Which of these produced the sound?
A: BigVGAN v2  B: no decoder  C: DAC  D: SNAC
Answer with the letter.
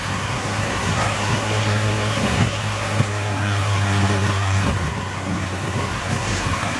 D